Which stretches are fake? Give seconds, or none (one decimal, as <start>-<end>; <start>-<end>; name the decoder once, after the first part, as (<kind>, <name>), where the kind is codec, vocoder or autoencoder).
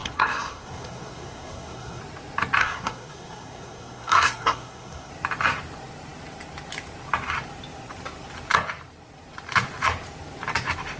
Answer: 0.0-2.0 (codec, SNAC); 2.6-5.1